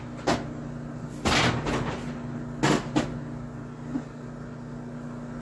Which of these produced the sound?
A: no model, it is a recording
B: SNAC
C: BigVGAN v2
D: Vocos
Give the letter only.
A